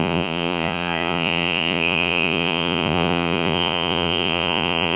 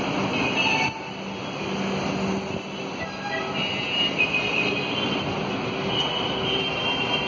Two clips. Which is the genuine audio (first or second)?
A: second